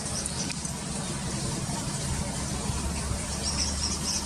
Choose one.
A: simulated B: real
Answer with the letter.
B